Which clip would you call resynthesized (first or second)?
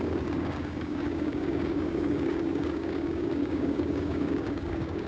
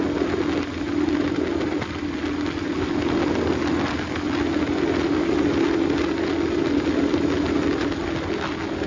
first